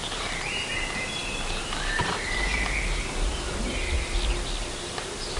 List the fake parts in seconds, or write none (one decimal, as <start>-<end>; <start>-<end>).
none